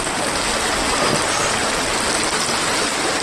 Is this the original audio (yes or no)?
yes